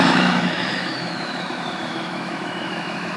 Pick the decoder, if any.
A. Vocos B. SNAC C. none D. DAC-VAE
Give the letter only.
D